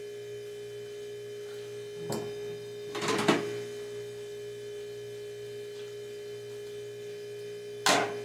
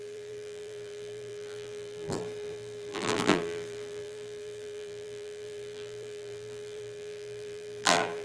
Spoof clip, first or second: second